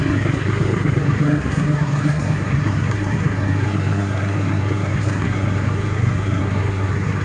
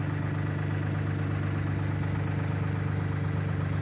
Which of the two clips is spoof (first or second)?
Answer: first